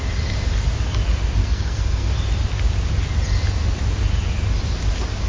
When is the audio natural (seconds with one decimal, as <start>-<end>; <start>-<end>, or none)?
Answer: 0.0-1.4; 2.1-5.3